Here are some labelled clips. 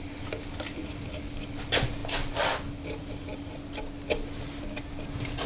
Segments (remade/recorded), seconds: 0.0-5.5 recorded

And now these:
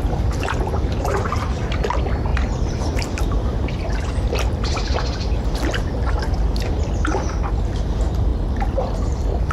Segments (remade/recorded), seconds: 0.0-2.3 recorded; 2.3-6.1 remade; 6.1-9.5 recorded

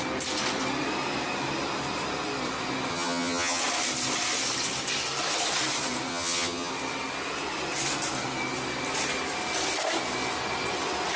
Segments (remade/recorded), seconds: 0.0-2.9 recorded; 2.9-3.6 remade; 3.6-6.1 recorded; 6.1-6.7 remade; 6.7-11.2 recorded

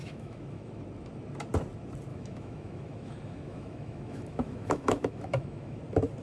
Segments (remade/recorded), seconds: 0.0-0.8 remade; 0.8-2.1 recorded; 2.1-5.8 remade; 5.8-6.2 recorded

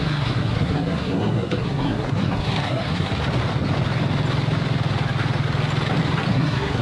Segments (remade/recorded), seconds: 0.0-3.1 remade; 3.1-6.3 recorded; 6.3-6.8 remade

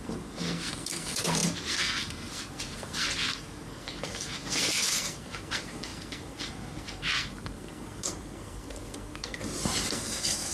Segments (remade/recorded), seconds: 0.0-9.4 remade; 9.4-9.9 recorded; 9.9-10.5 remade

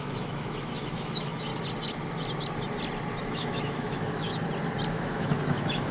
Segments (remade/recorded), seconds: 0.0-1.5 remade; 1.5-3.2 recorded; 3.2-4.3 remade; 4.3-4.9 recorded; 4.9-5.9 remade

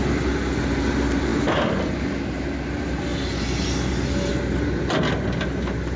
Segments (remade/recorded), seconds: 0.0-6.0 recorded